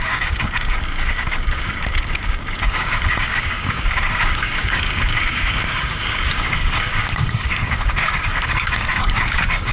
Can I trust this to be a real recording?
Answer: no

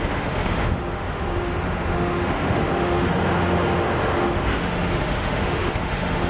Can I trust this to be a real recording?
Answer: no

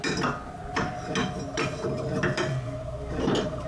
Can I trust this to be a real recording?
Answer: yes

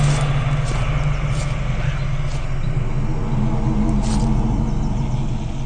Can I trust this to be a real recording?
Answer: yes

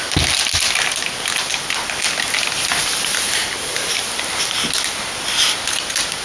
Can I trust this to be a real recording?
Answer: yes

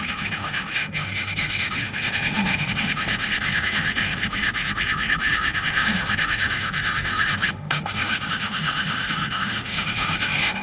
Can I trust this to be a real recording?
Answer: no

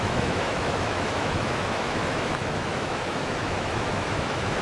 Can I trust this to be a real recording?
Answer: no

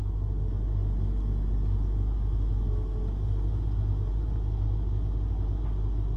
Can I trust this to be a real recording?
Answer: yes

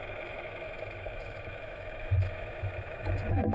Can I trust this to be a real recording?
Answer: no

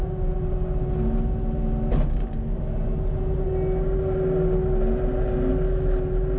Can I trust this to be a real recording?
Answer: yes